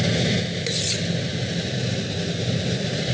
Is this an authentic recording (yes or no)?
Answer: yes